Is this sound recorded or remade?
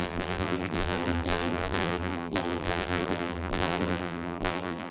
remade